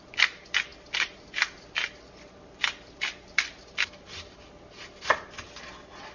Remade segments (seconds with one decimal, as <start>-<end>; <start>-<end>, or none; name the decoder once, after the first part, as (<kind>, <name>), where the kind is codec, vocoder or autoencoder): none